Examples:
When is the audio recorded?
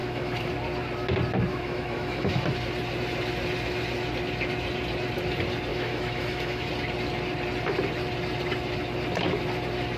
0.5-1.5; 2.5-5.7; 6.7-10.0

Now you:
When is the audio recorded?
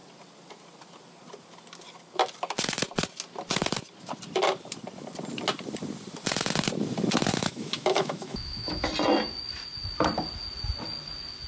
0.0-7.3; 8.9-11.5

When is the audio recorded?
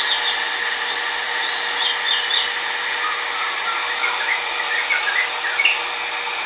0.0-6.5